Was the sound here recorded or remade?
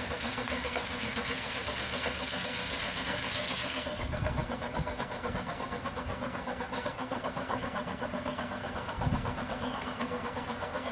remade